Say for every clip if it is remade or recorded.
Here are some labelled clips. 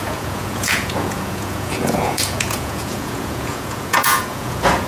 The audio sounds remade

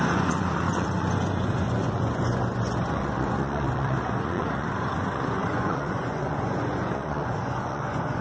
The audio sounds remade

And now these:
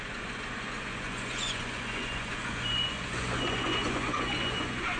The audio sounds remade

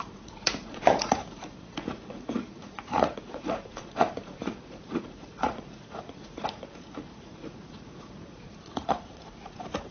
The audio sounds remade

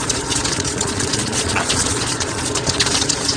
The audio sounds remade